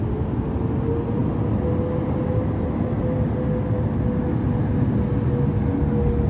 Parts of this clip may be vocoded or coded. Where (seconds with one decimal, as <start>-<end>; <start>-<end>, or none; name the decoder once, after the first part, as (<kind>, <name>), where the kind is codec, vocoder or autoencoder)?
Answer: none